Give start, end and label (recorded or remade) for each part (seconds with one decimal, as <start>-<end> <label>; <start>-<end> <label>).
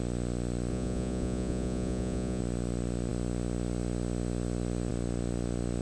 0.0-0.7 recorded; 0.7-2.4 remade; 2.4-5.8 recorded